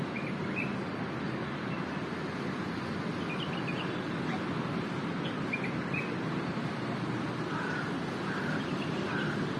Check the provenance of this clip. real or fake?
real